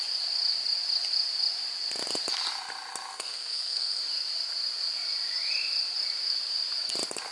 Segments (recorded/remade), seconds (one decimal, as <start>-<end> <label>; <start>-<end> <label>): 0.0-3.1 recorded; 3.1-4.0 remade; 4.0-7.3 recorded